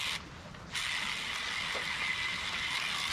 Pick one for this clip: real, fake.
real